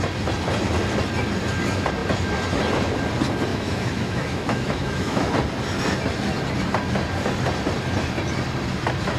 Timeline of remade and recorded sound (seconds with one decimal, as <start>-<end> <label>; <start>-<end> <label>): 0.0-3.5 recorded; 3.5-5.3 remade; 5.3-9.2 recorded